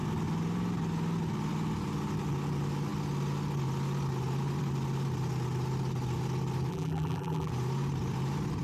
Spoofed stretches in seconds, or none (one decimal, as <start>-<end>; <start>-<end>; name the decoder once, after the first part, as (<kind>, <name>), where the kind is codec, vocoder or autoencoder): 6.7-7.5 (vocoder, BigVGAN v2)